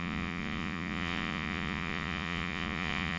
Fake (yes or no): yes